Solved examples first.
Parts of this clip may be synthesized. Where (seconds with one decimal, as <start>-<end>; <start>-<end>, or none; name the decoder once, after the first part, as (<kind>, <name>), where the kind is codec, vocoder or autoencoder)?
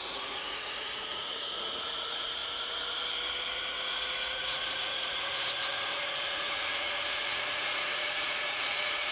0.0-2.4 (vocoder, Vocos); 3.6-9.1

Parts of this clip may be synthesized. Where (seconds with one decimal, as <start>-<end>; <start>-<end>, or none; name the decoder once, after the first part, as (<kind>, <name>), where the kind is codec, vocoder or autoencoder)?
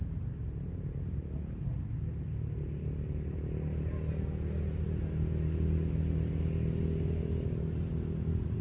none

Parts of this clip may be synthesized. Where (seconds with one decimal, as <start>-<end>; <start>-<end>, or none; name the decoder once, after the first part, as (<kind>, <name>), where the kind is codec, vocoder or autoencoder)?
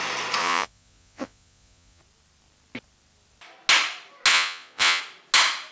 0.4-2.0 (vocoder, Vocos); 4.3-5.0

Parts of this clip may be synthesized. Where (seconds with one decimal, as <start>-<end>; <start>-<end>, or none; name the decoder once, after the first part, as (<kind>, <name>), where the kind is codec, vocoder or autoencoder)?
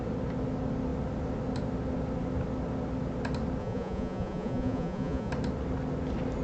3.6-5.3 (vocoder, Vocos)